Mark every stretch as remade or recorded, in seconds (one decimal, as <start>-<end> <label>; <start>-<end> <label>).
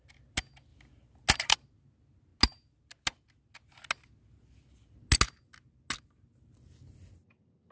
0.0-7.7 recorded